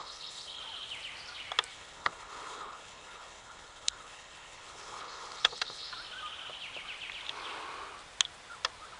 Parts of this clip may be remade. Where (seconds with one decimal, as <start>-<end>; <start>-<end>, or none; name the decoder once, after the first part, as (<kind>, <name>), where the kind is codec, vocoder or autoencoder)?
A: 0.0-0.6 (codec, HILCodec); 1.7-5.9